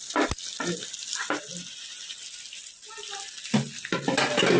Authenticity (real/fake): real